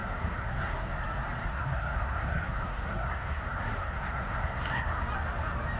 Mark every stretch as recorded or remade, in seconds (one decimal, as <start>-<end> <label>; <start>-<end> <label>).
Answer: 0.0-0.9 remade; 0.9-1.5 recorded; 1.5-5.0 remade; 5.0-5.8 recorded